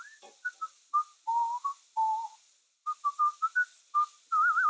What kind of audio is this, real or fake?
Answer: real